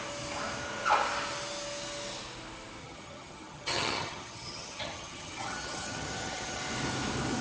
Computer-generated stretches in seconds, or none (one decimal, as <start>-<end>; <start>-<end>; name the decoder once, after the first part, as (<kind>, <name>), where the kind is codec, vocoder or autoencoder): 2.8-6.6 (vocoder, HiFi-GAN)